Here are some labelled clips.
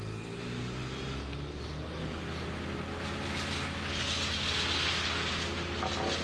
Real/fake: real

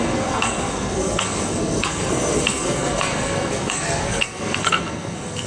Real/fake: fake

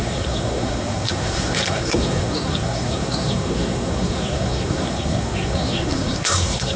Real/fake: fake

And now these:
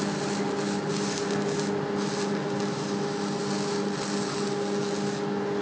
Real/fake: real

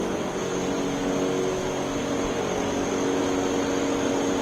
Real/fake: real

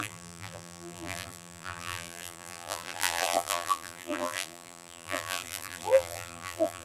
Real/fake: fake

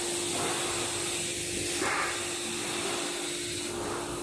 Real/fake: real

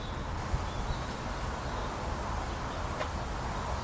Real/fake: real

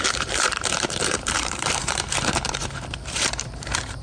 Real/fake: fake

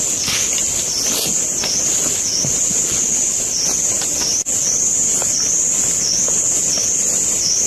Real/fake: real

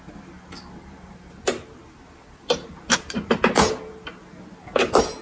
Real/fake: real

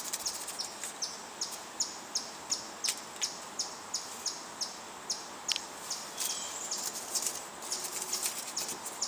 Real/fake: real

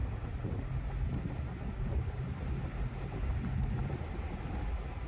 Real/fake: real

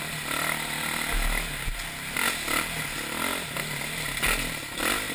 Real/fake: real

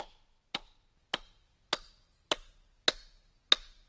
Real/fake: real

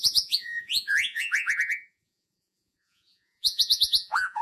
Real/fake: fake